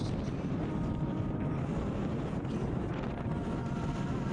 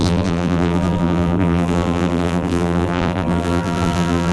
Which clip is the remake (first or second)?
second